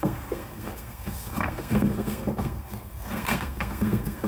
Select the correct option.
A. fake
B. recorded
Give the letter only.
A